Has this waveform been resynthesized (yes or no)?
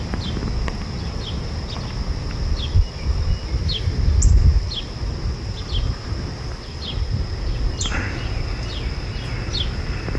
no